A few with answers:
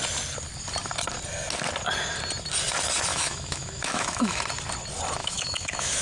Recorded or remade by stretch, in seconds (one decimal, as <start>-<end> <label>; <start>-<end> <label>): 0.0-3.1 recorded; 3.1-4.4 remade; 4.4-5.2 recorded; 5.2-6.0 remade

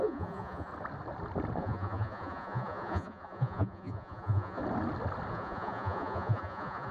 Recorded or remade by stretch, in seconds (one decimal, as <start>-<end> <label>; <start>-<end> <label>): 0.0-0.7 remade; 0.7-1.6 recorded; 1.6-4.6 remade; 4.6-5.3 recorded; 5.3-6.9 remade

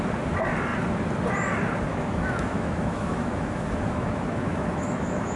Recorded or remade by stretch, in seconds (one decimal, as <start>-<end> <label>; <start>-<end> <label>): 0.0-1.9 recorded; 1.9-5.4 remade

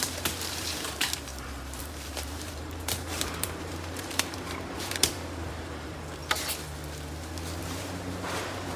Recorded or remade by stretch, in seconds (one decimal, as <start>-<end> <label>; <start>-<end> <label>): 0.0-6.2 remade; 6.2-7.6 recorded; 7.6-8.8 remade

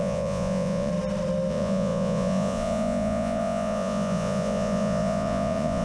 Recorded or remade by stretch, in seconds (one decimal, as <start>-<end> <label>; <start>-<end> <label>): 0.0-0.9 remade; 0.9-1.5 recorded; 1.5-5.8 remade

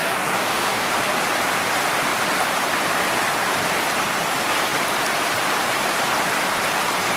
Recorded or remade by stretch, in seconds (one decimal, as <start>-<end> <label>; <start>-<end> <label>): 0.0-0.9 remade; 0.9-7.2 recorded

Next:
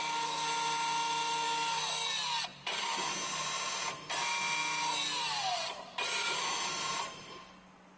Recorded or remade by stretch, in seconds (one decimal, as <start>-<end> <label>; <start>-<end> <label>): 0.0-8.0 recorded